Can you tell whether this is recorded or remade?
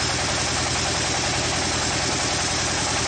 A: recorded